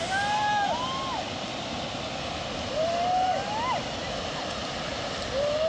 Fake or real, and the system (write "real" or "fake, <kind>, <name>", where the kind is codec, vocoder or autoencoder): real